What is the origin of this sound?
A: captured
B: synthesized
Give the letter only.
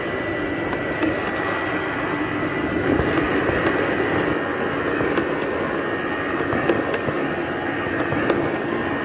A